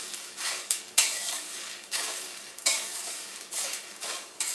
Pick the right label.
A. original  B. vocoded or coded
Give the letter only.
B